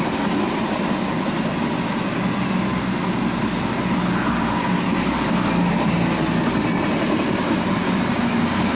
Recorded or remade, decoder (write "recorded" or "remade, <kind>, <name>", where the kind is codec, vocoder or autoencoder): recorded